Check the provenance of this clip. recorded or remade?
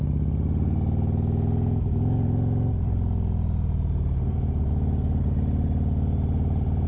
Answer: recorded